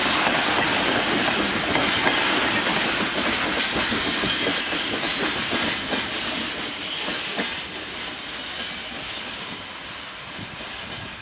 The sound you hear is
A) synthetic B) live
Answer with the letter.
B